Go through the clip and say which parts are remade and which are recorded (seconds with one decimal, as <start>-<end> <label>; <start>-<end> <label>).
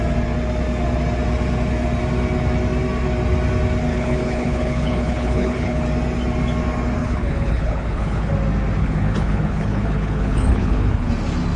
0.0-3.9 recorded; 3.9-5.8 remade; 5.8-7.0 recorded; 7.0-8.3 remade; 8.3-8.8 recorded; 8.8-11.1 remade; 11.1-11.6 recorded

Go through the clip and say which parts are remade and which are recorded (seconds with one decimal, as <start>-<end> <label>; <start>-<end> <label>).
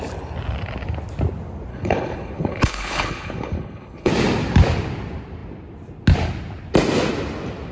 0.0-1.7 recorded; 1.7-4.1 remade; 4.1-7.7 recorded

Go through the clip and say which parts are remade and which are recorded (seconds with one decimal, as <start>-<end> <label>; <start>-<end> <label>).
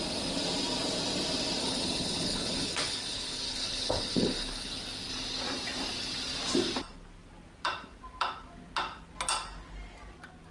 0.0-1.6 recorded; 1.6-4.7 remade; 4.7-10.5 recorded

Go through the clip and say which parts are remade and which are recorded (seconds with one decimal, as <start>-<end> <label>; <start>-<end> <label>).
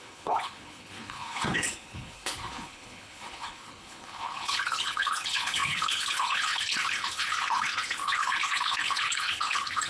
0.0-9.9 remade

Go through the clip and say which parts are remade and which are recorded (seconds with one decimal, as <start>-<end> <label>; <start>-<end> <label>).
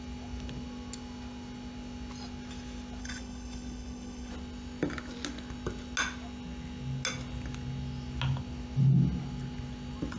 0.0-3.0 recorded; 3.0-4.3 remade; 4.3-10.2 recorded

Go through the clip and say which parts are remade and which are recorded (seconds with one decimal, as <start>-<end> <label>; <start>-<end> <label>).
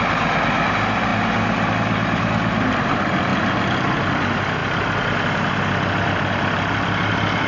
0.0-7.5 recorded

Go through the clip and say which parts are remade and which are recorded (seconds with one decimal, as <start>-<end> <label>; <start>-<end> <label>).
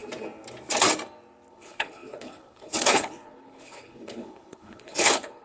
0.0-1.5 recorded; 1.5-5.4 remade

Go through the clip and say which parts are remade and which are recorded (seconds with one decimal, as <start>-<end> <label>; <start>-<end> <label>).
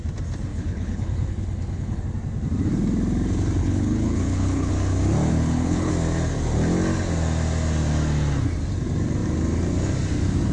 0.0-0.5 recorded; 0.5-2.0 remade; 2.0-3.6 recorded; 3.6-4.7 remade; 4.7-5.3 recorded; 5.3-5.9 remade; 5.9-10.5 recorded